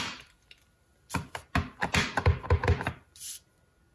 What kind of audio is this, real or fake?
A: real